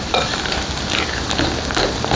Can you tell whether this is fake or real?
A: real